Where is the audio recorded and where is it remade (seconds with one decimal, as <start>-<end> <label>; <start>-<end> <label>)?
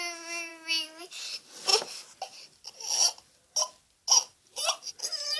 0.0-5.4 recorded